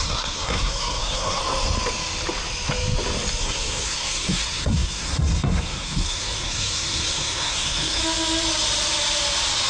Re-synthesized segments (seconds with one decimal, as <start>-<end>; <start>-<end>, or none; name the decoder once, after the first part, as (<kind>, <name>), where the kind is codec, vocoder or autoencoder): 0.0-1.4 (codec, SNAC); 3.4-8.0